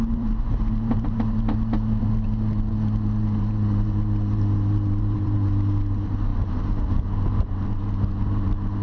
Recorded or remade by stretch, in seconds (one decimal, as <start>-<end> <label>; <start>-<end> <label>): 0.0-8.8 remade